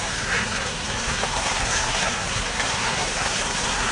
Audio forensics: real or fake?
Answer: fake